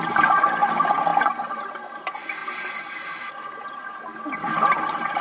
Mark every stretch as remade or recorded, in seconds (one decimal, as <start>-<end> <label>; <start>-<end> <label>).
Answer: 0.0-5.2 recorded